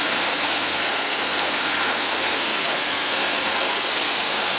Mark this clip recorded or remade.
remade